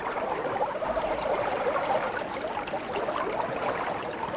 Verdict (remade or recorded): recorded